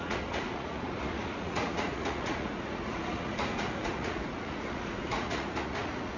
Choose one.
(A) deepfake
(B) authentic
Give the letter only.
A